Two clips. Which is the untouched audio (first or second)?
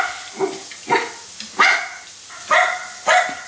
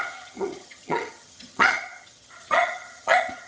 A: first